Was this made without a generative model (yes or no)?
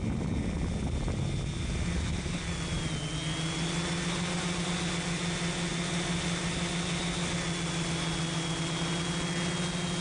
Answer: yes